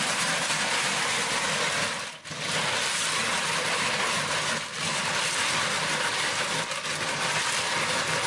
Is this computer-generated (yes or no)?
no